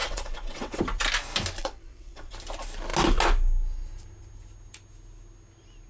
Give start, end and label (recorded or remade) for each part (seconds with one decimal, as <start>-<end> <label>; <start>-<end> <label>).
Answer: 0.0-0.8 remade; 0.8-1.6 recorded; 1.6-2.3 remade; 2.3-5.9 recorded